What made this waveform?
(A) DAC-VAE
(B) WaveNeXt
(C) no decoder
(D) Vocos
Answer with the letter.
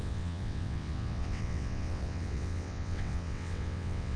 B